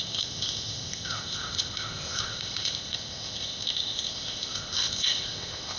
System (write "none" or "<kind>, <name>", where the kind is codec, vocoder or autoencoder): codec, ZipCodec